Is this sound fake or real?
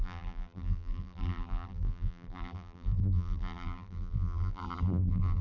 fake